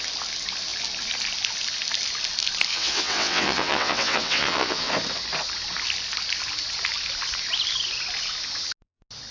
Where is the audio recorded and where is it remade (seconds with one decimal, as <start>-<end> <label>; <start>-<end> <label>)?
0.0-2.7 recorded; 2.7-4.9 remade; 4.9-9.3 recorded